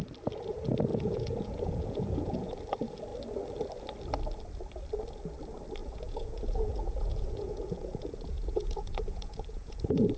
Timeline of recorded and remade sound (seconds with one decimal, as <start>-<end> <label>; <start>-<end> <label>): 0.0-0.9 recorded; 0.9-2.5 remade; 2.5-5.8 recorded; 5.8-10.2 remade

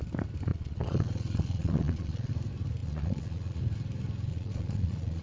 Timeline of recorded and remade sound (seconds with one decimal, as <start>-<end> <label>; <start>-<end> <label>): 0.0-0.5 recorded; 0.5-2.3 remade; 2.3-2.8 recorded; 2.8-3.6 remade; 3.6-4.3 recorded; 4.3-5.2 remade

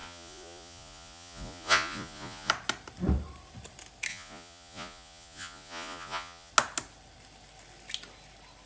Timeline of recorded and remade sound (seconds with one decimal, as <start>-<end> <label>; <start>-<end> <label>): 0.0-2.5 remade; 2.5-4.1 recorded; 4.1-6.5 remade; 6.5-8.7 recorded

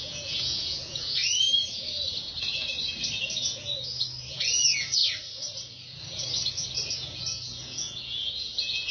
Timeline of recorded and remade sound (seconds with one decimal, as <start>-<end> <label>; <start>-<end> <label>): 0.0-1.2 remade; 1.2-3.2 recorded; 3.2-3.7 remade; 3.7-4.3 recorded; 4.3-5.0 remade; 5.0-6.9 recorded; 6.9-8.9 remade

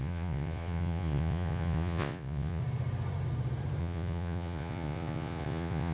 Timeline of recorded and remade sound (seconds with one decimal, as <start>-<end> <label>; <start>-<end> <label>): 0.0-2.6 remade; 2.6-3.8 recorded; 3.8-5.9 remade

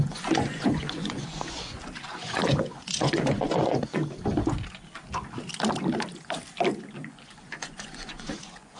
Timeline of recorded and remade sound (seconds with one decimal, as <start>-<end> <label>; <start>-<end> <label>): 0.0-4.0 remade; 4.0-7.0 recorded; 7.0-8.8 remade

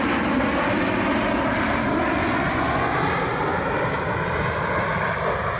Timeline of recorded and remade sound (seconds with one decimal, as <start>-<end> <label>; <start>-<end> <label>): 0.0-2.2 recorded; 2.2-2.9 remade; 2.9-5.6 recorded